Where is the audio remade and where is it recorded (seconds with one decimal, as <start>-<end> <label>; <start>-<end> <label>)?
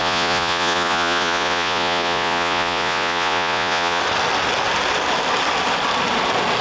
0.0-4.0 remade; 4.0-6.6 recorded